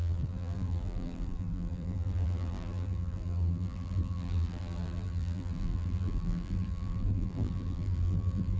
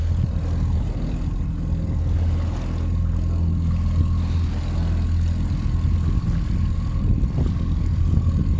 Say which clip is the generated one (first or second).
first